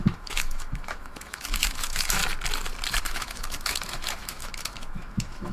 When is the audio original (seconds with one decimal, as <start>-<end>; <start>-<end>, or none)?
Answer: 2.2-3.0